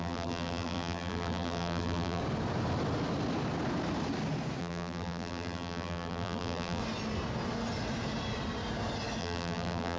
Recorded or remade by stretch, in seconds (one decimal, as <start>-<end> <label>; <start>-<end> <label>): 0.0-2.2 remade; 2.2-4.6 recorded; 4.6-6.8 remade; 6.8-9.2 recorded; 9.2-10.0 remade